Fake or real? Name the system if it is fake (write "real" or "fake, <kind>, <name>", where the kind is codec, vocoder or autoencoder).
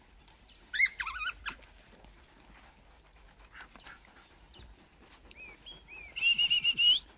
real